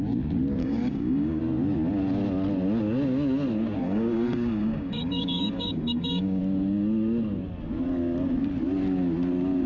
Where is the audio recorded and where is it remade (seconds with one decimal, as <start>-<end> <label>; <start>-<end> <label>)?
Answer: 0.0-0.6 recorded; 0.6-1.4 remade; 1.4-3.8 recorded; 3.8-6.4 remade; 6.4-9.7 recorded